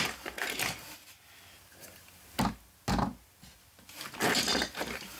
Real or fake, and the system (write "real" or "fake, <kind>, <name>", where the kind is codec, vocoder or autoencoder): real